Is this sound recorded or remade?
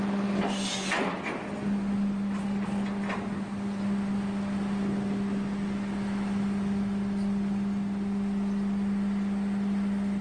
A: recorded